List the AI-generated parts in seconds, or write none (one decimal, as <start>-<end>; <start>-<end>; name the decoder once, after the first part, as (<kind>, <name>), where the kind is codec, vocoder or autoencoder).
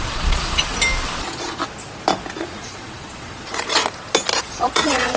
0.0-0.6 (vocoder, Vocos); 1.2-1.6; 2.4-3.8; 4.4-5.2